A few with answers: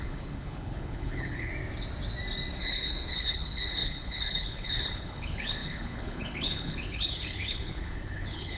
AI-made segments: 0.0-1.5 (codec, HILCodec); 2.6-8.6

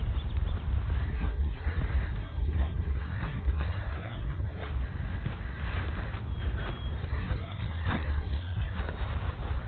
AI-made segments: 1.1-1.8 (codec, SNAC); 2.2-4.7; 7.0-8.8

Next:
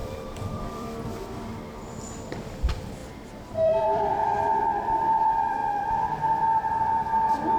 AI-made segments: 0.0-7.6 (vocoder, BigVGAN v2)

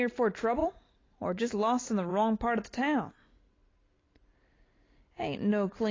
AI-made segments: 0.6-1.5 (vocoder, BigVGAN v2)

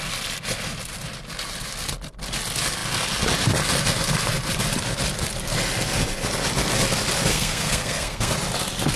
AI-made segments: 7.3-8.3 (codec, SNAC)

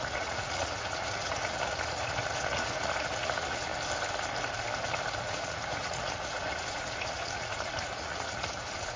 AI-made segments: 0.0-3.7 (vocoder, Vocos); 5.2-9.0

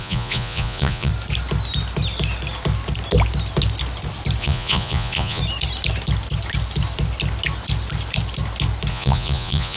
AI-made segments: 0.0-1.1 (vocoder, Vocos); 4.4-5.4; 8.9-9.8

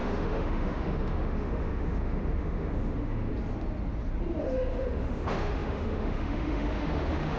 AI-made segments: 0.0-3.3 (autoencoder, DAC-VAE); 4.4-7.4